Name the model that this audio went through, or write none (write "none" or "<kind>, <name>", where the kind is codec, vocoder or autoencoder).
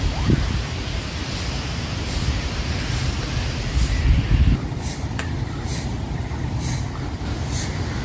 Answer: none